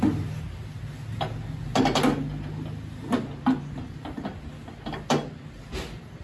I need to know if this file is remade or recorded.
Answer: recorded